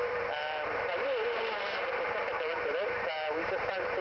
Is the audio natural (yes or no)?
no